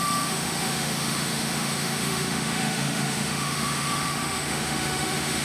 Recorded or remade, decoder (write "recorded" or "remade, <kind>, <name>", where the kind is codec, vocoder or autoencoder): remade, autoencoder, DAC-VAE